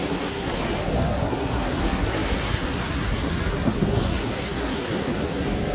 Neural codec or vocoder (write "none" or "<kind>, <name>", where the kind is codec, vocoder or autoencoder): codec, SNAC